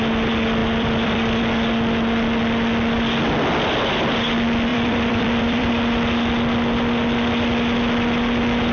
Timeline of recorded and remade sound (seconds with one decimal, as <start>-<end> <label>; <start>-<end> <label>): 0.0-0.6 recorded; 0.6-1.4 remade; 1.4-4.7 recorded; 4.7-5.7 remade; 5.7-8.7 recorded